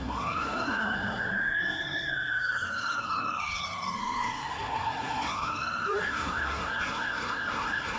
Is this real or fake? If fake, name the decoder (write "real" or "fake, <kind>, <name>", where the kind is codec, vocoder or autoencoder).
fake, codec, SNAC